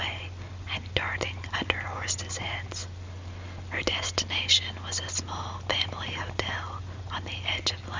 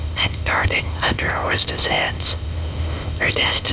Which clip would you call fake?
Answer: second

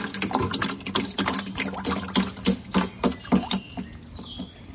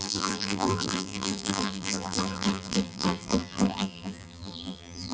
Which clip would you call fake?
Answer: second